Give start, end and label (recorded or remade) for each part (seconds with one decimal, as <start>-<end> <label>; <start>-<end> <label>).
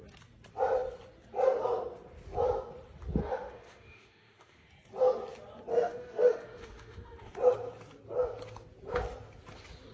0.0-3.2 recorded; 3.2-4.7 remade; 4.7-5.7 recorded; 5.7-7.3 remade; 7.3-9.9 recorded